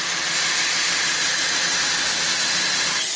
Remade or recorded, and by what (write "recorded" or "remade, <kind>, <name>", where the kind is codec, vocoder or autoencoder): recorded